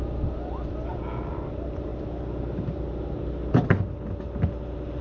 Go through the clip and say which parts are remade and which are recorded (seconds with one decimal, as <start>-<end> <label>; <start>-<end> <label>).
0.0-5.0 recorded